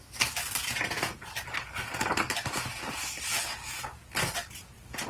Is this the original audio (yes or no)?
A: yes